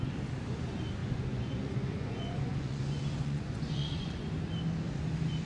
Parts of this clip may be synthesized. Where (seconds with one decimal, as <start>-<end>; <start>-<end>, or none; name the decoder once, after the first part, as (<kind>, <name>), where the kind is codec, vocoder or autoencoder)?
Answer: 1.0-4.3 (vocoder, Vocos)